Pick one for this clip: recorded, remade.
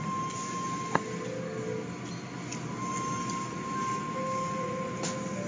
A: recorded